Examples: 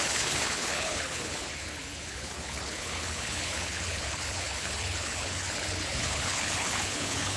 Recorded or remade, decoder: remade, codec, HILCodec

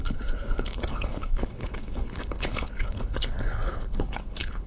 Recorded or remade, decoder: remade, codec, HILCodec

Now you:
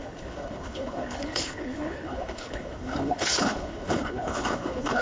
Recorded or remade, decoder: remade, codec, HILCodec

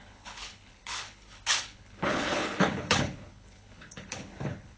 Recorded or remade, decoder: remade, codec, HILCodec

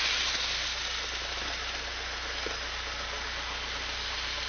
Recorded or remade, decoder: recorded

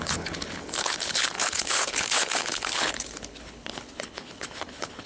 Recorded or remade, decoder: remade, codec, HILCodec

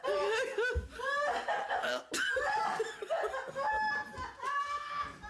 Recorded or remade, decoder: recorded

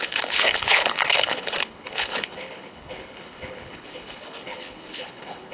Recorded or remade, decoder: remade, codec, HILCodec